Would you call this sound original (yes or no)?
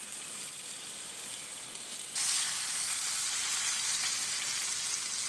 yes